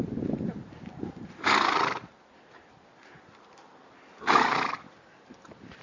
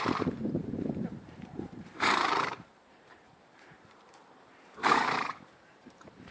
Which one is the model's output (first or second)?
second